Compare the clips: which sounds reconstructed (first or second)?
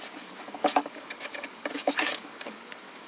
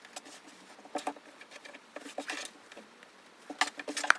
first